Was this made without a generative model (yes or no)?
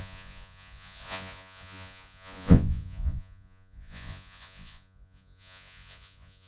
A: no